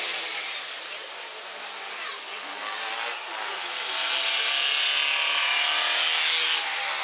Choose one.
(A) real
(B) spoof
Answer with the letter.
A